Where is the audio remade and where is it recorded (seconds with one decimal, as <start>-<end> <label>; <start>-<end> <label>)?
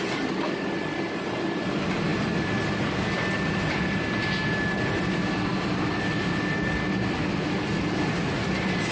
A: 0.0-2.1 recorded; 2.1-2.7 remade; 2.7-4.4 recorded; 4.4-5.2 remade; 5.2-8.9 recorded